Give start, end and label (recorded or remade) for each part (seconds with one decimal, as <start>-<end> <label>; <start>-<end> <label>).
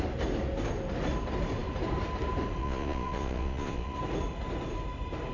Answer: 0.0-2.6 recorded; 2.6-4.0 remade; 4.0-5.3 recorded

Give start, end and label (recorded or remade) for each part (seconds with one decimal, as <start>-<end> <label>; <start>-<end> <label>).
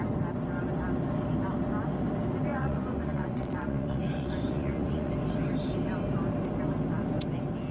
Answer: 0.0-2.5 recorded; 2.5-5.1 remade; 5.1-7.7 recorded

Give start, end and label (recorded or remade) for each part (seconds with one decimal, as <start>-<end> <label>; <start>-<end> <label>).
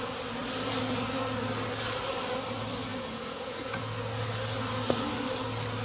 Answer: 0.0-2.9 recorded; 2.9-3.8 remade; 3.8-5.8 recorded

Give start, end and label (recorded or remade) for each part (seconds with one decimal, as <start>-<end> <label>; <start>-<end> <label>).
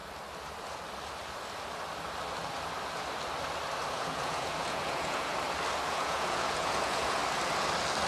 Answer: 0.0-3.9 recorded; 3.9-5.3 remade; 5.3-5.9 recorded; 5.9-7.2 remade; 7.2-8.1 recorded